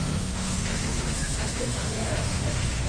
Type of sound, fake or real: fake